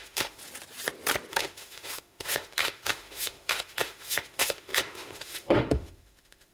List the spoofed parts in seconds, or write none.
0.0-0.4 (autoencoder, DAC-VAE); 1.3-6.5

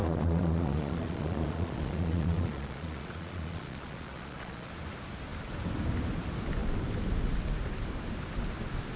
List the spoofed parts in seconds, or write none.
0.0-4.7 (vocoder, Vocos)

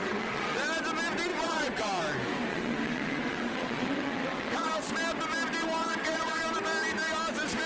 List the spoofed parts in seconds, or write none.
0.0-0.6 (vocoder, WaveNeXt); 1.3-2.0; 2.5-4.7; 5.8-6.4

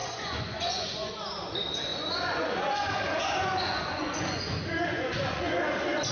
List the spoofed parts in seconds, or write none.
0.0-1.1 (vocoder, Vocos); 1.9-5.6